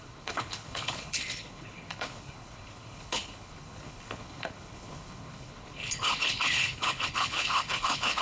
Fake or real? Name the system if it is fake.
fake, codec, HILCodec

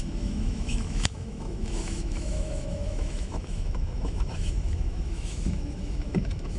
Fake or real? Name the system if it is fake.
fake, autoencoder, DAC-VAE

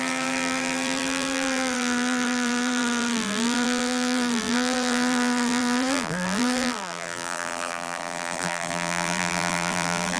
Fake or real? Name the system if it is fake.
fake, vocoder, BigVGAN v2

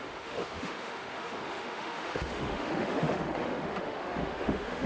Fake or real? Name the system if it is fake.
fake, autoencoder, DAC-VAE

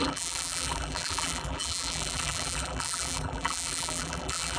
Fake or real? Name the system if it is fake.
fake, vocoder, BigVGAN v2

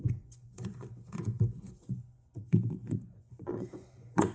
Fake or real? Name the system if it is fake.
fake, vocoder, Vocos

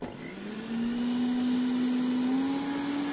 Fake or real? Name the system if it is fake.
real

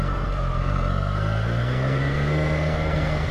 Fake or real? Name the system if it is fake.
fake, codec, SNAC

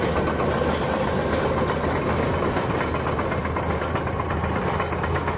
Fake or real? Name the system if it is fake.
real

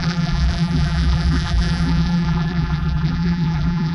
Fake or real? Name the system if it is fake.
fake, vocoder, BigVGAN v2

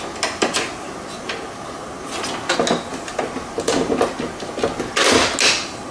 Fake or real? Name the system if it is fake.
real